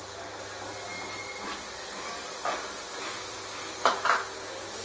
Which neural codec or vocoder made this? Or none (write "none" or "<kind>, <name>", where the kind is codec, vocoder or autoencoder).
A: none